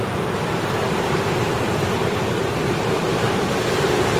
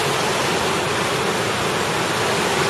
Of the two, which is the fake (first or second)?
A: first